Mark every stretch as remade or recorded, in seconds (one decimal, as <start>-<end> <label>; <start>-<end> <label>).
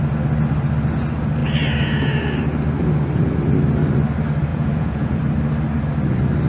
0.0-4.5 recorded; 4.5-5.2 remade; 5.2-6.5 recorded